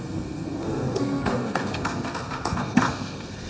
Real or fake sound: fake